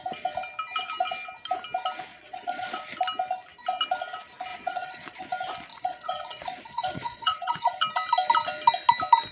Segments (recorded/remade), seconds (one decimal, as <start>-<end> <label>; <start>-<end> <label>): 0.0-2.1 recorded; 2.1-2.7 remade; 2.7-4.5 recorded; 4.5-5.2 remade; 5.2-5.7 recorded; 5.7-7.7 remade; 7.7-9.3 recorded